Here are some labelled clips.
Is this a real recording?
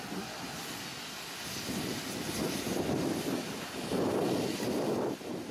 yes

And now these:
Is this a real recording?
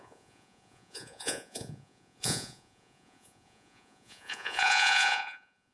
no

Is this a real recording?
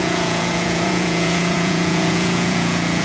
no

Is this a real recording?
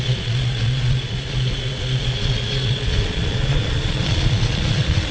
no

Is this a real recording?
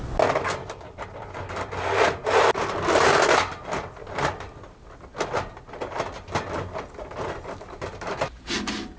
yes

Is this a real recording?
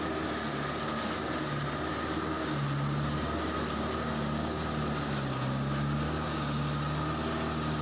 yes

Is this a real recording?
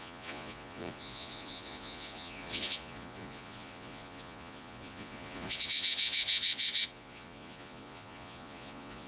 no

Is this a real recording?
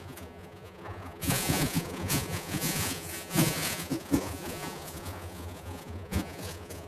no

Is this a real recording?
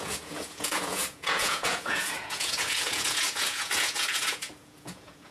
no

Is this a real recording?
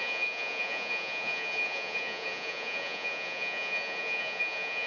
no